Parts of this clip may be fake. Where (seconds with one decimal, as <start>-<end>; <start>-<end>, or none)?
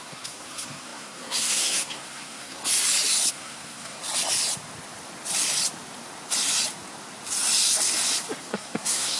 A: 0.0-2.6; 3.3-4.0; 8.4-9.2